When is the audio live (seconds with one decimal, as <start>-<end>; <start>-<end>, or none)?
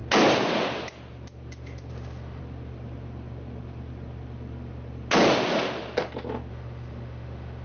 0.0-1.9; 2.4-6.5